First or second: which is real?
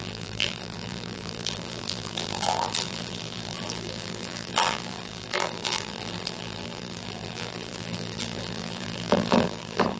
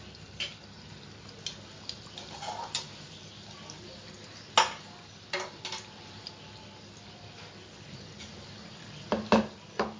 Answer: second